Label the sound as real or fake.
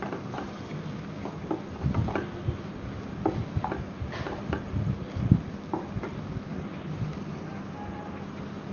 real